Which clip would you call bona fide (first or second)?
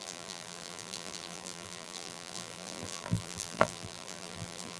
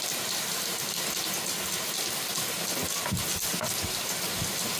second